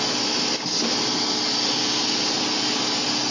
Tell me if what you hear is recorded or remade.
recorded